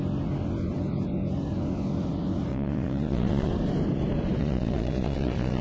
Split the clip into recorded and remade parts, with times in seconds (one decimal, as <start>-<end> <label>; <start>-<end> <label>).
0.0-2.5 recorded; 2.5-3.5 remade; 3.5-4.4 recorded; 4.4-5.6 remade